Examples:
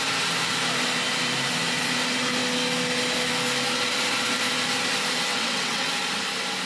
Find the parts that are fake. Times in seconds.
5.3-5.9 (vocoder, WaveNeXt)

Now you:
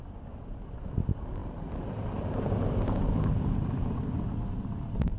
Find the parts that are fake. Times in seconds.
none

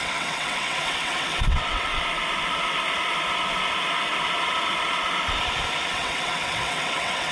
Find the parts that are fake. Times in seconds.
0.0-1.9 (vocoder, WaveNeXt); 5.9-7.3

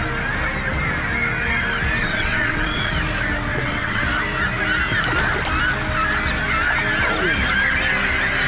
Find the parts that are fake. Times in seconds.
2.0-2.9 (vocoder, WaveNeXt); 3.5-4.0

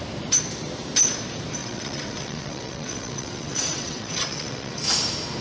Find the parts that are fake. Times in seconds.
1.6-4.8 (vocoder, WaveNeXt)